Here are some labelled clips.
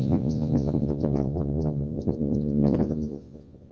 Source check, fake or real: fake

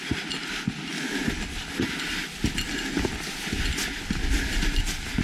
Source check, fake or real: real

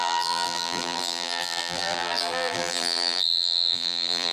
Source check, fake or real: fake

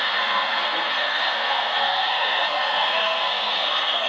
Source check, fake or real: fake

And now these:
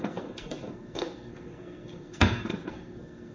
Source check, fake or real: fake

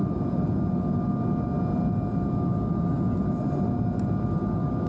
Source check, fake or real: real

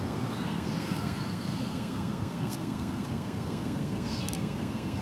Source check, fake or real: fake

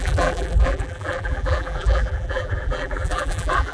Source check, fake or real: fake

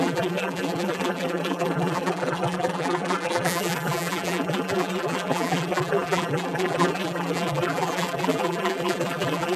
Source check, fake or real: fake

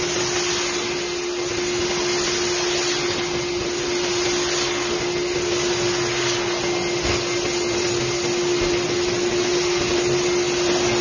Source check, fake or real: real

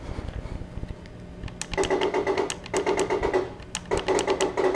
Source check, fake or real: real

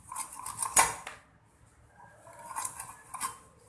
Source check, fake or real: real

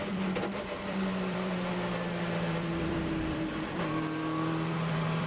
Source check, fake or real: fake